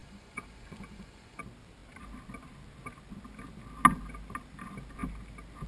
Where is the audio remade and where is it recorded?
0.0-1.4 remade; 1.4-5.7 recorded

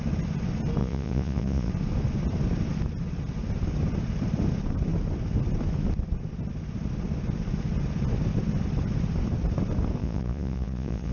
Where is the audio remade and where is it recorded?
0.0-0.8 recorded; 0.8-1.7 remade; 1.7-10.0 recorded; 10.0-11.1 remade

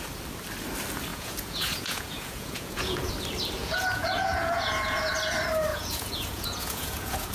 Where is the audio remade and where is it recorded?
0.0-1.1 recorded; 1.1-3.1 remade; 3.1-3.6 recorded; 3.6-5.1 remade; 5.1-5.7 recorded; 5.7-7.3 remade

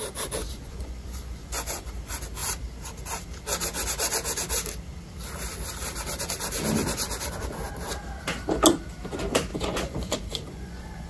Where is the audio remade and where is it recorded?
0.0-0.4 recorded; 0.4-1.9 remade; 1.9-9.5 recorded; 9.5-11.1 remade

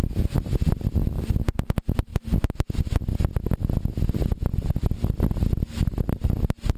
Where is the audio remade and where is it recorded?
0.0-6.8 recorded

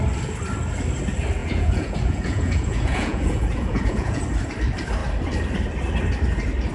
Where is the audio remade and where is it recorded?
0.0-1.4 recorded; 1.4-4.2 remade; 4.2-6.7 recorded